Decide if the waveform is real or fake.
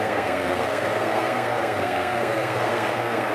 fake